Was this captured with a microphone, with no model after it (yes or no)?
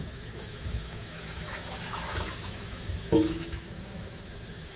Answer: no